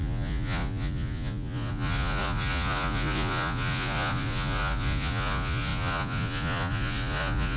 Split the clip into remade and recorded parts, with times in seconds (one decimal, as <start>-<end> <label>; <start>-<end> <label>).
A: 0.0-7.6 remade